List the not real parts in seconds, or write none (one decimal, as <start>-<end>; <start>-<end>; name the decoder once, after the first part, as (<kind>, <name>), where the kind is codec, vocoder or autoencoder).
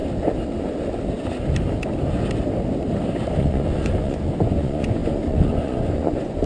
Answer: 3.4-6.5 (vocoder, Vocos)